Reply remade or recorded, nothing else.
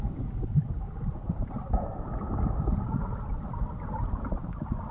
recorded